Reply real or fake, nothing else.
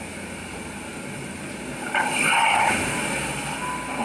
real